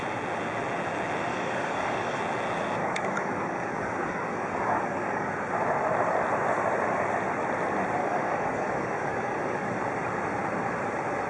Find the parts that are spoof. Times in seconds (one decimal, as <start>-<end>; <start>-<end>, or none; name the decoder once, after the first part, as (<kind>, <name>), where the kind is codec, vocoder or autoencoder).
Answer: 1.3-2.2 (codec, DAC); 2.8-5.3; 8.0-9.8